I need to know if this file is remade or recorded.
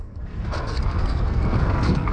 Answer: remade